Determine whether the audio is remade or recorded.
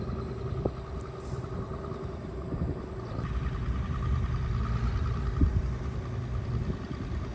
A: recorded